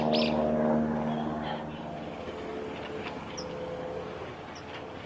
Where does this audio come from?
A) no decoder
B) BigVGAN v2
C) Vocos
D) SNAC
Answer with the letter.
A